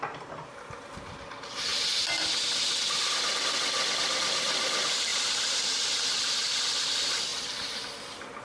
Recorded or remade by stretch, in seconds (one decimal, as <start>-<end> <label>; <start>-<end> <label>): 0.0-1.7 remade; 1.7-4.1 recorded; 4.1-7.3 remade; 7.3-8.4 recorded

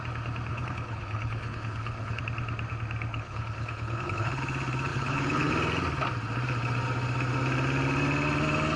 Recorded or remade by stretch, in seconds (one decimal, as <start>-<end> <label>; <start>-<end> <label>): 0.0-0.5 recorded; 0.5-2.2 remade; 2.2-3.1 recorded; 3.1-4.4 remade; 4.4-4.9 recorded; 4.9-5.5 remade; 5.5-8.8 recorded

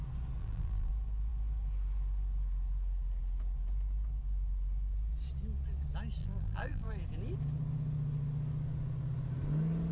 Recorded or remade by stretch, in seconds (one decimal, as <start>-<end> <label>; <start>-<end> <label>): 0.0-0.4 recorded; 0.4-0.9 remade; 0.9-6.2 recorded; 6.2-6.9 remade; 6.9-9.9 recorded

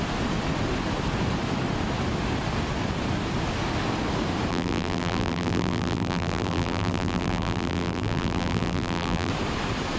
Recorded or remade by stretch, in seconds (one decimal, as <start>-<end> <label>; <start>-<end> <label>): 0.0-4.5 recorded; 4.5-9.3 remade; 9.3-10.0 recorded

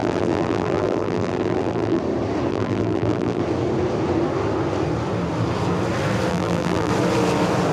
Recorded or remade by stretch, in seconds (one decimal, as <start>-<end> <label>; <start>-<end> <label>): 0.0-2.0 remade; 2.0-2.5 recorded; 2.5-3.4 remade; 3.4-6.3 recorded; 6.3-6.9 remade; 6.9-7.7 recorded

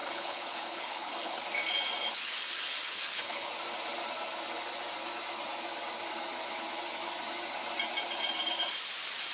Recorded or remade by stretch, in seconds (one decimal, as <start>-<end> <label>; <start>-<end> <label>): 0.0-1.4 remade; 1.4-2.2 recorded; 2.2-3.5 remade; 3.5-9.3 recorded